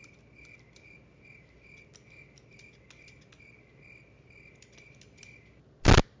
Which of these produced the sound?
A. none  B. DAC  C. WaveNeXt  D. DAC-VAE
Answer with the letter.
A